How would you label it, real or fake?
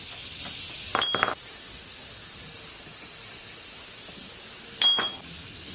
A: real